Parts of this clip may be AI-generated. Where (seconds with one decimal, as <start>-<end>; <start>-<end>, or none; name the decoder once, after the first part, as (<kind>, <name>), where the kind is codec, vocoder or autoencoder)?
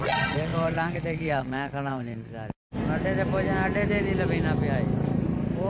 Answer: 0.0-2.3 (vocoder, Vocos)